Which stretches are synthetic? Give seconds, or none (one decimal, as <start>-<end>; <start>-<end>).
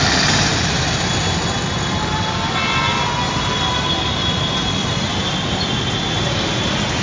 none